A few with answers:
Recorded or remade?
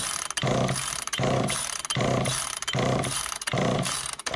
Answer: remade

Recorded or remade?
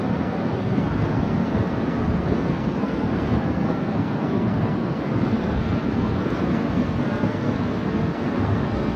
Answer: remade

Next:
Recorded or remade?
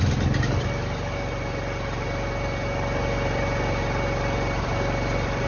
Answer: recorded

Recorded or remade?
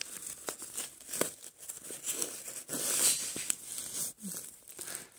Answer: recorded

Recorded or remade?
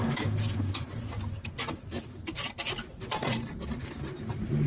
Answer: remade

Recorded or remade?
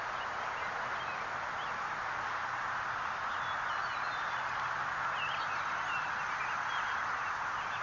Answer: recorded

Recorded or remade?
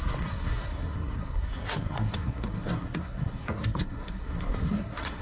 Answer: remade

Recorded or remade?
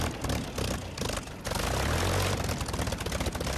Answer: recorded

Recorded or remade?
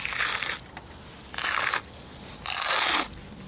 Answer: recorded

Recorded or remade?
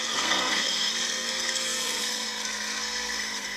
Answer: remade